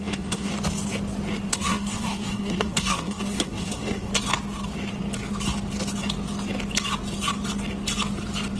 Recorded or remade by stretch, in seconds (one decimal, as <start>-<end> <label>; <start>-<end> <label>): 0.0-0.5 remade; 0.5-1.5 recorded; 1.5-4.1 remade; 4.1-8.6 recorded